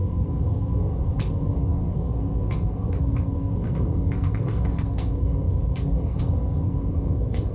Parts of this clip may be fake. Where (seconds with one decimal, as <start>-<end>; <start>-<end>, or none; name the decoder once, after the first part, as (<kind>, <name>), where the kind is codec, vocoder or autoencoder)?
0.0-7.5 (codec, SNAC)